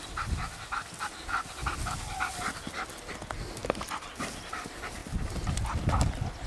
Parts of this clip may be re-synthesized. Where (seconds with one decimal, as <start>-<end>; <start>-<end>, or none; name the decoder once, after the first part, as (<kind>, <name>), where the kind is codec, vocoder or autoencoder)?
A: none